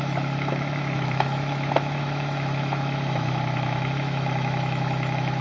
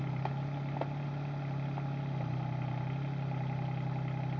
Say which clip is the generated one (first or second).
first